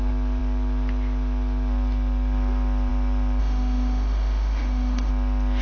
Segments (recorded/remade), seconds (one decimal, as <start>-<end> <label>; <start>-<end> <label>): 0.0-3.4 recorded; 3.4-5.1 remade; 5.1-5.6 recorded